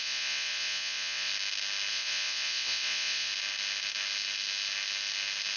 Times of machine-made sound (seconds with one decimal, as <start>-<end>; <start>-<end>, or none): 0.0-1.3; 1.9-3.3